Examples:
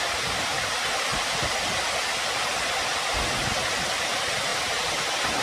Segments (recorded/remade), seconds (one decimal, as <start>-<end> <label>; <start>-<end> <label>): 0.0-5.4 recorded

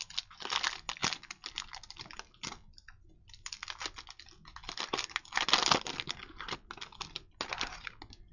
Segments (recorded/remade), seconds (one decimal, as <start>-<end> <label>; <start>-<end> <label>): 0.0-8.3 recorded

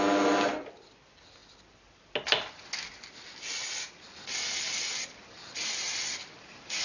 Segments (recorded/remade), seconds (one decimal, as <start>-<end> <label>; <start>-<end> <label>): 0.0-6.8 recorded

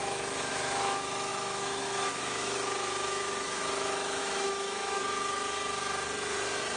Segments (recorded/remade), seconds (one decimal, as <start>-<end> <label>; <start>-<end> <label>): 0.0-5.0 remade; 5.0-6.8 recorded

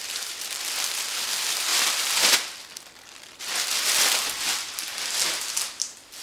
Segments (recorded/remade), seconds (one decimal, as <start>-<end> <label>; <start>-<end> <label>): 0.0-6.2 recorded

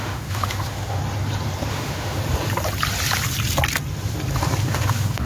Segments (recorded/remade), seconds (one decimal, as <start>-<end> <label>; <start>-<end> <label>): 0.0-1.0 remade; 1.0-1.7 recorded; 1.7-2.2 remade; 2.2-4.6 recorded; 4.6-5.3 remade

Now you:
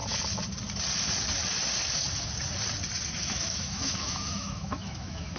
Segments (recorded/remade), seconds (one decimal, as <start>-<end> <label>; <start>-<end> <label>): 0.0-3.2 recorded; 3.2-5.4 remade

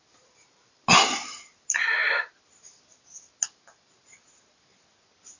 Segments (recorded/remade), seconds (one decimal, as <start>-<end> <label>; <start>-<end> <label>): 0.0-5.4 recorded